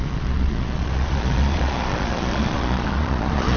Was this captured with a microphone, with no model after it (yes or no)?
no